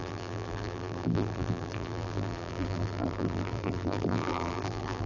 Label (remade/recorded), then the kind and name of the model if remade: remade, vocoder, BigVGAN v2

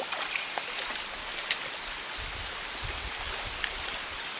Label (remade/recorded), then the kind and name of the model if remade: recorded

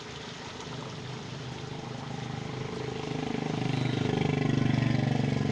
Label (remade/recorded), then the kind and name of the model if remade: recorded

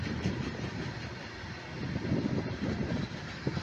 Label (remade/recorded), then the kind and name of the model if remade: recorded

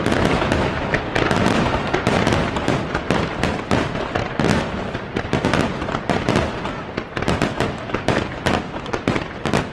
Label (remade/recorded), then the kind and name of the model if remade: recorded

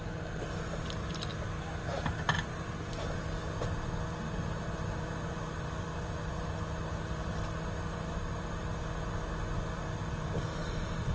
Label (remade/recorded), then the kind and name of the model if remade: recorded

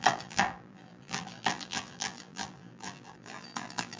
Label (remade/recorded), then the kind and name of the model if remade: remade, vocoder, BigVGAN v2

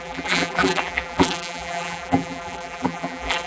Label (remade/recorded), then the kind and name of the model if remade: remade, vocoder, BigVGAN v2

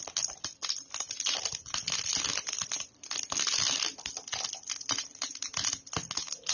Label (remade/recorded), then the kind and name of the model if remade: recorded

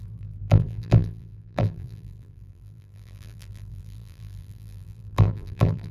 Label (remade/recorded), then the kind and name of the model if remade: remade, vocoder, BigVGAN v2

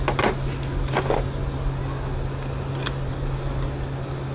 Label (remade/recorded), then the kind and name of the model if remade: recorded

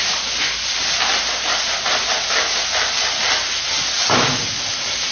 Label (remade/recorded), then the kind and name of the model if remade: recorded